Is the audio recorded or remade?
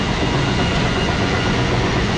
remade